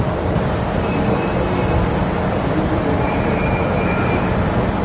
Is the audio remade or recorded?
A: remade